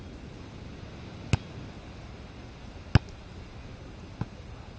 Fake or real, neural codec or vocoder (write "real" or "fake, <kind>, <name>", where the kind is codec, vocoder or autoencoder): real